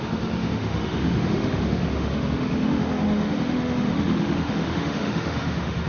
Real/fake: fake